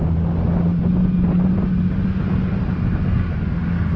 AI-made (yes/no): no